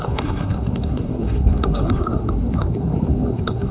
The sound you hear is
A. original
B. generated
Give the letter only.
B